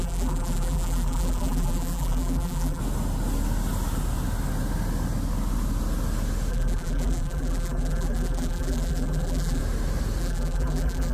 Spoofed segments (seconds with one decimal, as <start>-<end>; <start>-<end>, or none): 0.0-2.8; 6.5-9.6; 10.2-11.1